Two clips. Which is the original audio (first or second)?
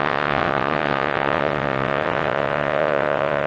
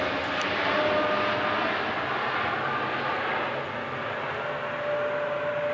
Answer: second